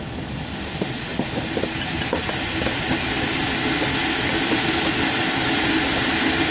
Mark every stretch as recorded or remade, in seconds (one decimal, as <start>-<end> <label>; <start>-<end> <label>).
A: 0.0-6.5 recorded

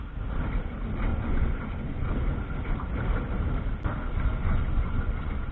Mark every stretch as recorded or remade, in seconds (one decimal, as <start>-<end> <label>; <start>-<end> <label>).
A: 0.0-1.1 recorded; 1.1-2.1 remade; 2.1-4.4 recorded; 4.4-5.5 remade

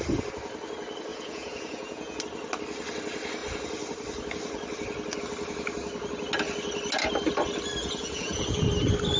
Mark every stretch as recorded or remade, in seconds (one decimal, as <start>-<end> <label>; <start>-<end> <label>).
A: 0.0-1.1 recorded; 1.1-2.2 remade; 2.2-7.8 recorded; 7.8-8.7 remade; 8.7-9.2 recorded